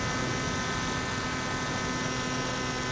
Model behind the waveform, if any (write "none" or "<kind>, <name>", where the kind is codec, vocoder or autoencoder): none